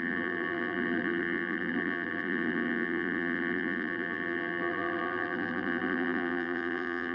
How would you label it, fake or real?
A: fake